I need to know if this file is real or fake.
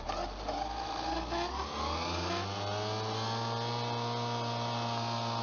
real